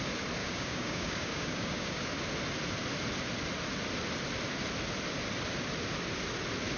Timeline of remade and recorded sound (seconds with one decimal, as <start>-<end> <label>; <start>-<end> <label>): 0.0-0.4 recorded; 0.4-2.0 remade; 2.0-6.8 recorded